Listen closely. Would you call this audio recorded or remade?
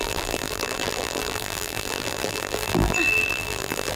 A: remade